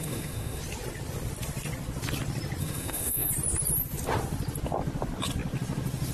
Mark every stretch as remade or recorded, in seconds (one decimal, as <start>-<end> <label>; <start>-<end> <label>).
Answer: 0.0-0.6 remade; 0.6-2.6 recorded; 2.6-3.3 remade; 3.3-6.1 recorded

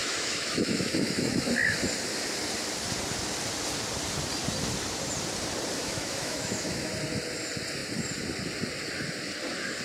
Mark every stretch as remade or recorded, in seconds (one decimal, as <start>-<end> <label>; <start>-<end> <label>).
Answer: 0.0-1.5 remade; 1.5-5.8 recorded; 5.8-6.9 remade; 6.9-9.8 recorded

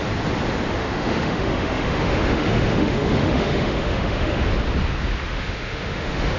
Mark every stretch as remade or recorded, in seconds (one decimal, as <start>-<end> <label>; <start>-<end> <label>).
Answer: 0.0-0.8 recorded; 0.8-4.4 remade; 4.4-5.3 recorded; 5.3-6.4 remade

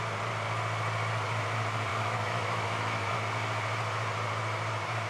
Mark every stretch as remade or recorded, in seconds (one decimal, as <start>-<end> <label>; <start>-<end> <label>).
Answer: 0.0-1.9 recorded; 1.9-3.1 remade; 3.1-5.1 recorded